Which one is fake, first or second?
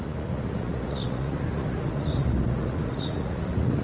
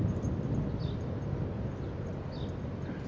first